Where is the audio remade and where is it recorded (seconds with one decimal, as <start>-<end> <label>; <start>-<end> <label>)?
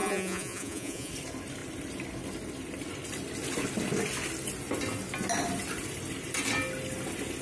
0.0-1.1 remade; 1.1-7.4 recorded